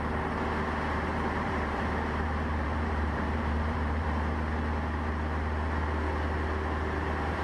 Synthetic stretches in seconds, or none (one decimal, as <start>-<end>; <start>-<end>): 1.1-4.1